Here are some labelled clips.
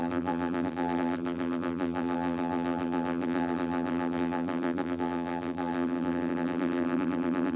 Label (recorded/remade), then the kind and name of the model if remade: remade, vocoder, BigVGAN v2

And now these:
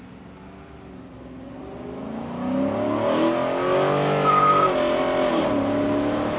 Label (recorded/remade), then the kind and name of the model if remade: recorded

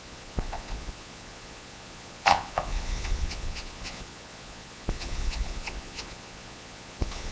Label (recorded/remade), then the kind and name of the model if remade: remade, vocoder, Vocos